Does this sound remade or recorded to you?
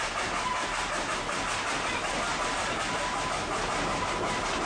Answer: recorded